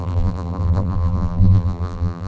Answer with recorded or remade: remade